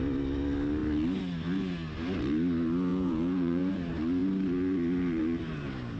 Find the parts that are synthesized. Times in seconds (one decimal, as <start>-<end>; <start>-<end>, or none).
2.9-3.7